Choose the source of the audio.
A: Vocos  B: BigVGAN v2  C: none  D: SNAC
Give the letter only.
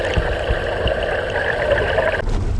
C